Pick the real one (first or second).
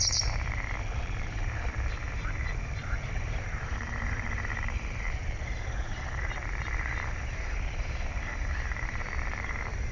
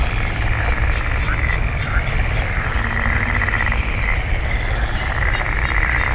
second